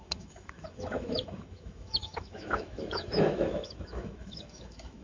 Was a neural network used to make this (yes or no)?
yes